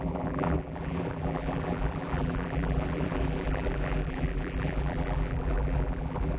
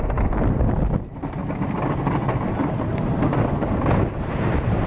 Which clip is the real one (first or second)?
second